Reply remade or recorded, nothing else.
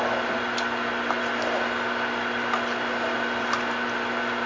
recorded